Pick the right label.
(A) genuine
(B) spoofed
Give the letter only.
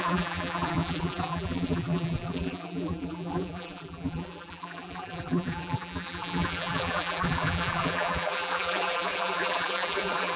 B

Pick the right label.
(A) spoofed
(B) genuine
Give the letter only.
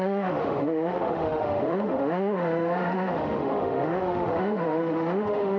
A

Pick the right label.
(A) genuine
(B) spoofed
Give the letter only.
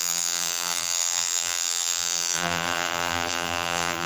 B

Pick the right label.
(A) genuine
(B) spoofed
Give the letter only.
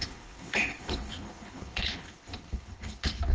B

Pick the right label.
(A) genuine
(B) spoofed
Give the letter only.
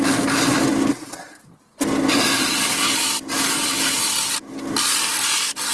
A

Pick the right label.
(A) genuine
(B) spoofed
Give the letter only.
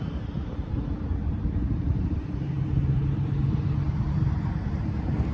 B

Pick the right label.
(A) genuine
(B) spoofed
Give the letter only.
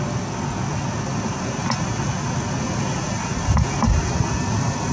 A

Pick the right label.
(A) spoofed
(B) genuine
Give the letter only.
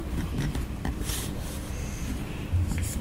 A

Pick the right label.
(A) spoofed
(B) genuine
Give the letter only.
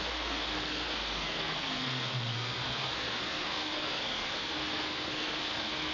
A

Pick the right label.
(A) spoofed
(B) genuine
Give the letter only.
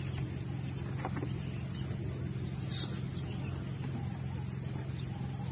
B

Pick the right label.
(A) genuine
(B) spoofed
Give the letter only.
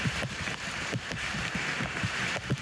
A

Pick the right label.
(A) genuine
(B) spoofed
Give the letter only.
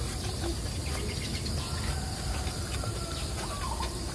A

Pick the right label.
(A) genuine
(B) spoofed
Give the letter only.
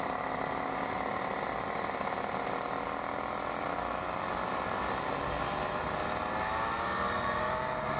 A